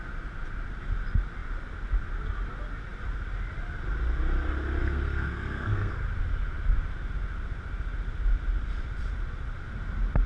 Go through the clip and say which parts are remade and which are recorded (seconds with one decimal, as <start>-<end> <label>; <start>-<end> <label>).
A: 0.0-4.8 recorded; 4.8-5.9 remade; 5.9-10.3 recorded